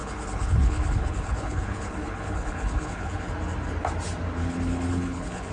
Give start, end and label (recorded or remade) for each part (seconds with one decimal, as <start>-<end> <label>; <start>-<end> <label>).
0.0-3.3 remade; 3.3-4.4 recorded; 4.4-5.5 remade